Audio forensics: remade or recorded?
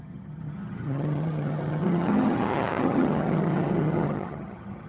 remade